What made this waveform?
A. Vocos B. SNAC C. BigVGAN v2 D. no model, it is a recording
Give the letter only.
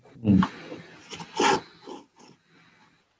D